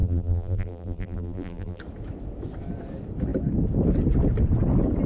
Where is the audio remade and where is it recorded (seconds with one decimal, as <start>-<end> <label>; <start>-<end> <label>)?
0.0-1.8 remade; 1.8-5.1 recorded